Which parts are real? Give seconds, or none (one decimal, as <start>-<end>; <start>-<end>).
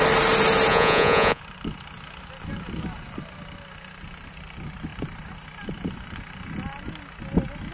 0.0-0.7; 1.4-7.7